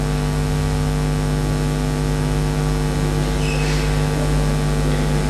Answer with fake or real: real